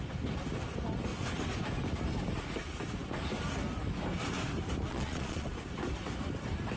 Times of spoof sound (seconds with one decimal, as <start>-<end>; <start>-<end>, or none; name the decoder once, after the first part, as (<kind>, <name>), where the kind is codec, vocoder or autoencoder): 4.9-5.5 (vocoder, Vocos)

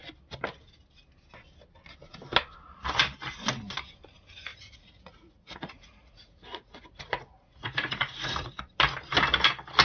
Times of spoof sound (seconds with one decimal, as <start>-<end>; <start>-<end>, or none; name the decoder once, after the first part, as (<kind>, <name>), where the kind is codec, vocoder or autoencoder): 4.5-8.6 (vocoder, Vocos)

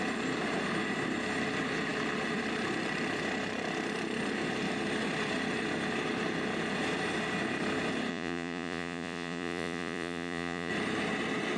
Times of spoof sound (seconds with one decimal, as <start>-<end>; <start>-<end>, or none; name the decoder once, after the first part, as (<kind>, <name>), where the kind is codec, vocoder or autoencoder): 8.1-10.7 (vocoder, Vocos)

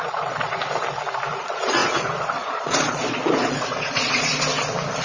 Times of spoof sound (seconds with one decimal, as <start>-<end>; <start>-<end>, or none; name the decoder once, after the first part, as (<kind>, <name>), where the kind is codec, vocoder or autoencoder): 0.0-0.6 (vocoder, Vocos); 1.4-4.3

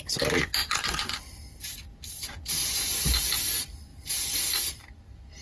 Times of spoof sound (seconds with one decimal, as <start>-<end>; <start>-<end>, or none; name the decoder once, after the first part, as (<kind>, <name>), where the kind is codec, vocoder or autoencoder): 0.6-1.2 (vocoder, Vocos); 2.6-3.2

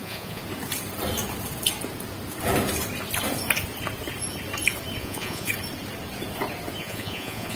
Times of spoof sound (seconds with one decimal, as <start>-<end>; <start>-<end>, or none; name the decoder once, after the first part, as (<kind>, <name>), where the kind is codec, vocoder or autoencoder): 0.0-0.4 (vocoder, Vocos); 5.0-5.5; 6.8-7.6

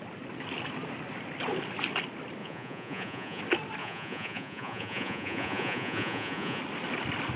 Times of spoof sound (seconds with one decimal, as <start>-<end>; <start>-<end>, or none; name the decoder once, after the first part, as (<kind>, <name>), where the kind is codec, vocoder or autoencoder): 2.4-3.4 (vocoder, Vocos); 3.8-6.6

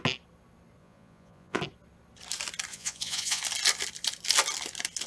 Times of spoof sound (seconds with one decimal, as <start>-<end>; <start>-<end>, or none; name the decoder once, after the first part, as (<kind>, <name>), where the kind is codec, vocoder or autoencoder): 0.8-1.6 (vocoder, Vocos); 2.7-3.4